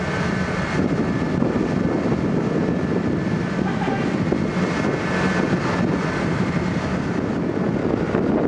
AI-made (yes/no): no